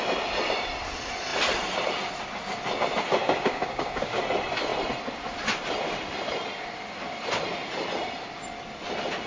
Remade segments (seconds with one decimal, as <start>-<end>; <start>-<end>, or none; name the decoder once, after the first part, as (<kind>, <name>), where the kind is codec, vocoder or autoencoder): 3.2-4.2 (codec, DAC)